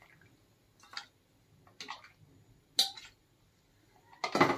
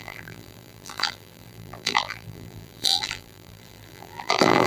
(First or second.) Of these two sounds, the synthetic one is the second